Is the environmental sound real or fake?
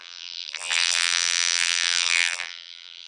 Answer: fake